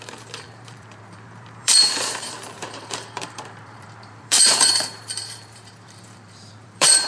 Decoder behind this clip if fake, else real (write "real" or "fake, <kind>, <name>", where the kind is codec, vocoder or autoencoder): fake, vocoder, BigVGAN v2